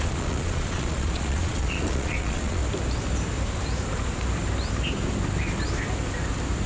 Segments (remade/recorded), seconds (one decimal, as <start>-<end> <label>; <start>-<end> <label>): 0.0-2.6 remade; 2.6-6.7 recorded